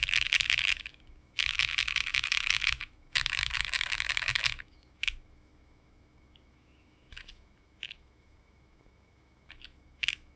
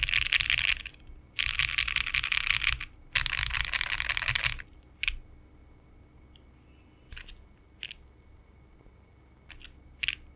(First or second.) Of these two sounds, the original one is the second